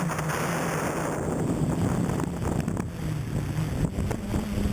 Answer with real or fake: real